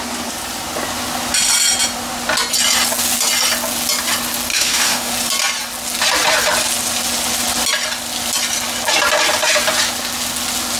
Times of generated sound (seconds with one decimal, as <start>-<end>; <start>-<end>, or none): 4.5-5.1

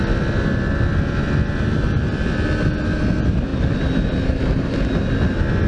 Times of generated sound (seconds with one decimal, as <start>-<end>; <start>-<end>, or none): none